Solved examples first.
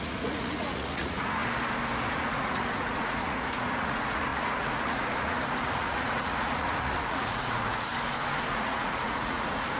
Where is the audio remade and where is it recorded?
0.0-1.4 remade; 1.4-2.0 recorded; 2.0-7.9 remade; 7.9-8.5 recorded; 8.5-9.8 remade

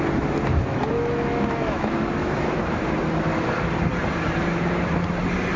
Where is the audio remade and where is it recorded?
0.0-0.5 recorded; 0.5-2.6 remade; 2.6-5.6 recorded

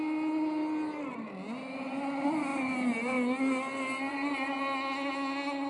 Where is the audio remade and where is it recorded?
0.0-4.1 recorded; 4.1-4.6 remade; 4.6-5.7 recorded

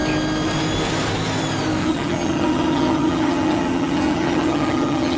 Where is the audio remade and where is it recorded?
0.0-1.8 recorded; 1.8-5.2 remade